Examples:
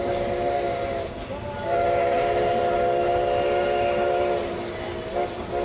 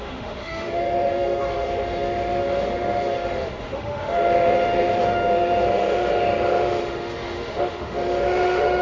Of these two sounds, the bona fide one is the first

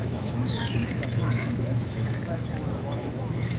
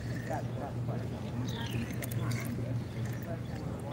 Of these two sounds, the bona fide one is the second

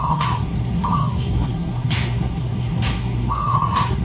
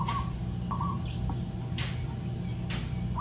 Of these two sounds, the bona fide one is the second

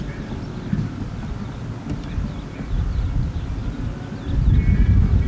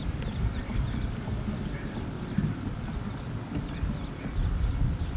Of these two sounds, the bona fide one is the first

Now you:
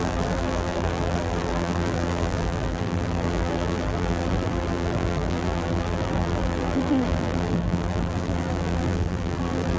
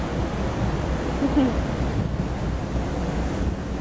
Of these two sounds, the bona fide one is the second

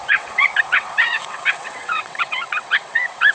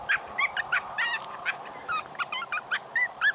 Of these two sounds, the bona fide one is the second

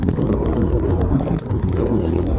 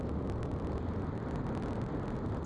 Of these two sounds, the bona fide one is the second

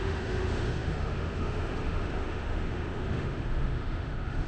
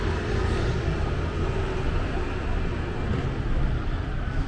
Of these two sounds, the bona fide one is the second